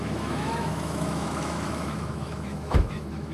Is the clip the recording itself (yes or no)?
no